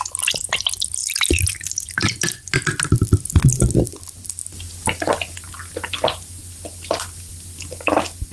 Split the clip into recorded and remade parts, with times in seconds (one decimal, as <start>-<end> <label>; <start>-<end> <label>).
0.0-8.3 recorded